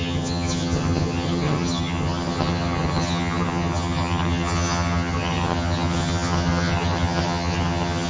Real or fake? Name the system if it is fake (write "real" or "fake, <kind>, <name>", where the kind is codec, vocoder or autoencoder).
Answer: fake, vocoder, HiFi-GAN